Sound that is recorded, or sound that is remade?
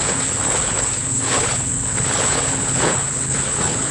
remade